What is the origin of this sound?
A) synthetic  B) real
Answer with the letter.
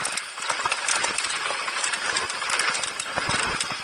B